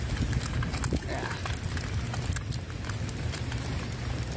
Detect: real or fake real